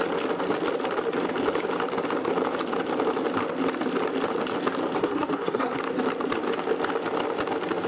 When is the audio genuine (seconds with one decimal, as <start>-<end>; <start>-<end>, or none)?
0.0-5.0; 5.8-7.9